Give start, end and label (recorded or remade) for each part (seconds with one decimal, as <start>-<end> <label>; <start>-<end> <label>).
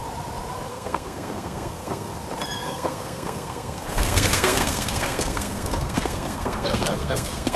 0.0-0.7 recorded; 0.7-2.1 remade; 2.1-2.6 recorded; 2.6-7.6 remade